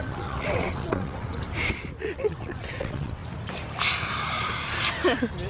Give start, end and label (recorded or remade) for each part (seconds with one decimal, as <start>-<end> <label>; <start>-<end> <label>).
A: 0.0-1.4 remade; 1.4-2.0 recorded; 2.0-3.2 remade; 3.2-5.5 recorded